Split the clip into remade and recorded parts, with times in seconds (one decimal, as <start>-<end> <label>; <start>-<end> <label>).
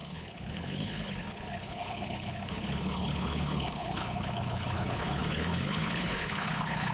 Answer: 0.0-6.9 remade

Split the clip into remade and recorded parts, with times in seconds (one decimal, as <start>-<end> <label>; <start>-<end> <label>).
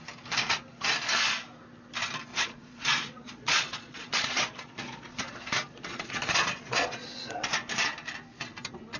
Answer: 0.0-2.3 recorded; 2.3-7.5 remade; 7.5-9.0 recorded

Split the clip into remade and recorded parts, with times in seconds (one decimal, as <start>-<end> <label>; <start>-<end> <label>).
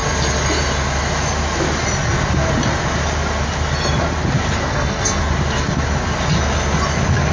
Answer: 0.0-4.7 recorded; 4.7-5.2 remade; 5.2-7.3 recorded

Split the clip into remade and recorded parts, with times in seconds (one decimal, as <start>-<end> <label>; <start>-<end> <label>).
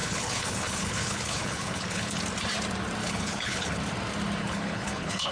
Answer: 0.0-2.2 remade; 2.2-3.0 recorded; 3.0-3.8 remade; 3.8-4.4 recorded; 4.4-5.3 remade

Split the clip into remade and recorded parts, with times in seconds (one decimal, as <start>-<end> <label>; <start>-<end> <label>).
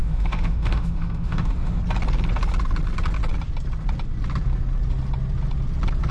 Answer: 0.0-1.8 remade; 1.8-6.1 recorded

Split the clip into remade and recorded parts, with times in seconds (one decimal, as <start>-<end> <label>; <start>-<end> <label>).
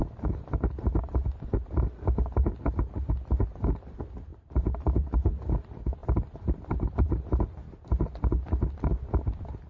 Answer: 0.0-4.3 recorded; 4.3-5.5 remade; 5.5-6.0 recorded; 6.0-7.6 remade; 7.6-9.7 recorded